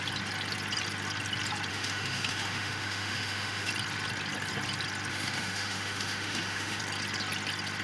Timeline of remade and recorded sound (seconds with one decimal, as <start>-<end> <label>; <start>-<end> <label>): 0.0-1.7 recorded; 1.7-3.7 remade; 3.7-5.1 recorded; 5.1-6.8 remade; 6.8-7.8 recorded